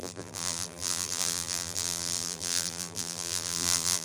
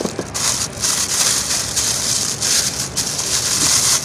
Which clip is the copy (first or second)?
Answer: first